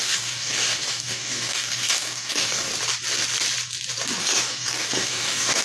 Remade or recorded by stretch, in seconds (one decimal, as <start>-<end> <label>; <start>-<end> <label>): 0.0-2.7 remade; 2.7-4.2 recorded; 4.2-5.6 remade